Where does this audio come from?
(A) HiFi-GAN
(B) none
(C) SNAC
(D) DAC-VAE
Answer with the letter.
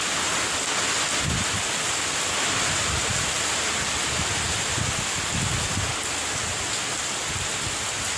B